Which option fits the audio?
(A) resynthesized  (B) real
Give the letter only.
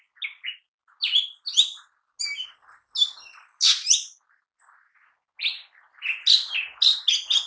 B